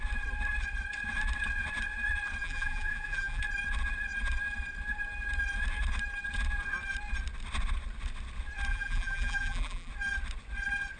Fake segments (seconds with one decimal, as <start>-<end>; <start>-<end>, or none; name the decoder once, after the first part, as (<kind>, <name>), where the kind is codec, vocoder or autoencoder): 2.4-3.4 (vocoder, BigVGAN v2); 8.7-9.9